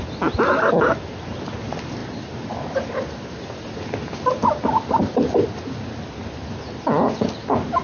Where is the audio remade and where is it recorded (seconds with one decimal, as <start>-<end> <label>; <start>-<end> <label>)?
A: 0.0-7.8 recorded